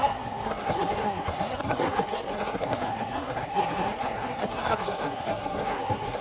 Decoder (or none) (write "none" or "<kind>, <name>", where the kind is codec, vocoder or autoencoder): codec, SNAC